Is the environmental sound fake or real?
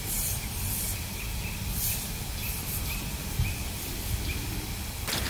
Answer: fake